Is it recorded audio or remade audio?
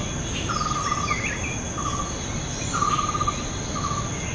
recorded